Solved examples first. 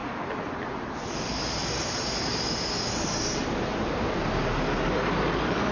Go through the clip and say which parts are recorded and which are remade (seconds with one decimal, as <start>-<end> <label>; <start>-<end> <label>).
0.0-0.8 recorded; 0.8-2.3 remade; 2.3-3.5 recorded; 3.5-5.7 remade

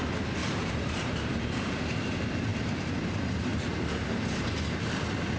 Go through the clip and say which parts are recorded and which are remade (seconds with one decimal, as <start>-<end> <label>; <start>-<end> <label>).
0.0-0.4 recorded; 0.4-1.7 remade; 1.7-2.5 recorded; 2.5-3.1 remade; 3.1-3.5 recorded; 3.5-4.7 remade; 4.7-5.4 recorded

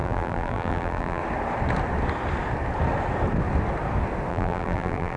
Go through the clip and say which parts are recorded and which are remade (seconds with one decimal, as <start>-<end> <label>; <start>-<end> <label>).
0.0-1.2 remade; 1.2-4.3 recorded; 4.3-5.2 remade